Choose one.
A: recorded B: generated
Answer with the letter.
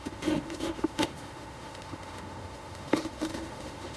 B